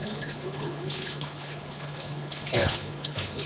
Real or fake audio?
fake